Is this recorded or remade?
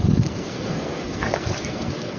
remade